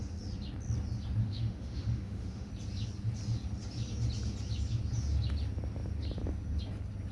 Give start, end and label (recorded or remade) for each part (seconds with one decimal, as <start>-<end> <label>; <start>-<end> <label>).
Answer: 0.0-1.2 recorded; 1.2-2.5 remade; 2.5-7.1 recorded

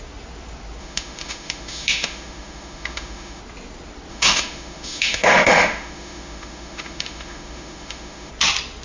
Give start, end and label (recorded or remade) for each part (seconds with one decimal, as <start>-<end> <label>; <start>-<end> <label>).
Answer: 0.0-0.8 recorded; 0.8-3.4 remade; 3.4-4.1 recorded; 4.1-8.3 remade; 8.3-8.8 recorded

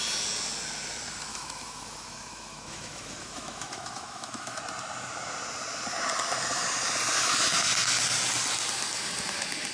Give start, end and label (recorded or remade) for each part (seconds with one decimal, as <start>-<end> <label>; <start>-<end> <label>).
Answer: 0.0-1.3 recorded; 1.3-4.6 remade; 4.6-9.7 recorded

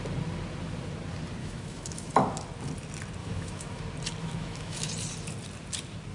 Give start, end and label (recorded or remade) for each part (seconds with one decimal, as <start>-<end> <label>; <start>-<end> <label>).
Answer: 0.0-1.4 recorded; 1.4-2.1 remade; 2.1-3.2 recorded; 3.2-3.8 remade; 3.8-4.2 recorded; 4.2-4.9 remade; 4.9-6.1 recorded